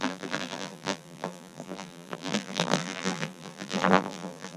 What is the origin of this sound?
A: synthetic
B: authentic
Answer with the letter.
A